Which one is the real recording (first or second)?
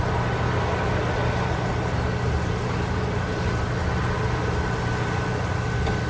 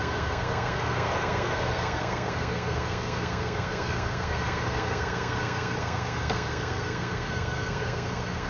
first